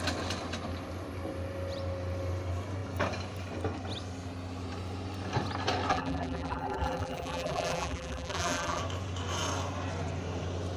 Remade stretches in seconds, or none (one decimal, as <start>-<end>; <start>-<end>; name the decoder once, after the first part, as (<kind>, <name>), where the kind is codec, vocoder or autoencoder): 5.9-8.8 (vocoder, BigVGAN v2)